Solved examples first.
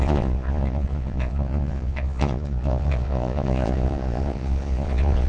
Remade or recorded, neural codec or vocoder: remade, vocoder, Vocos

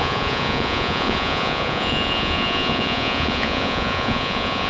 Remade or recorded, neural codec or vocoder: remade, vocoder, Vocos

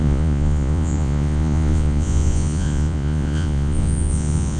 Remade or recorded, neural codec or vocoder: remade, vocoder, Vocos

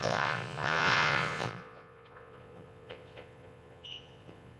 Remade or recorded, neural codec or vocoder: remade, vocoder, Vocos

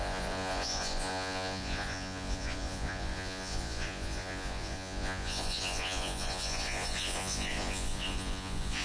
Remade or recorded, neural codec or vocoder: remade, vocoder, Vocos